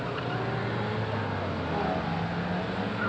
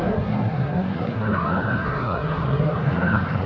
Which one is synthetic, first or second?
second